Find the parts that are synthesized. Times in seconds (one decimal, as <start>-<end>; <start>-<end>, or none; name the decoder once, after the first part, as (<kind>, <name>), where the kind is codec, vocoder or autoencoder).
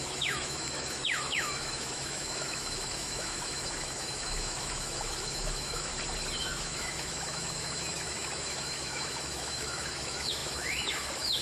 0.0-5.9 (autoencoder, DAC-VAE); 6.4-11.4